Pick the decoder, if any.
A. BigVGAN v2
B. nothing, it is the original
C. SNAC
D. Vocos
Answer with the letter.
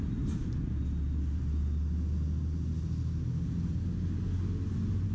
B